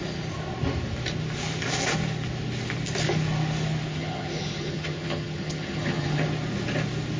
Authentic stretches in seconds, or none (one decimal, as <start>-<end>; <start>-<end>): 0.0-3.9; 6.2-7.2